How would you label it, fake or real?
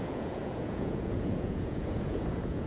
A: fake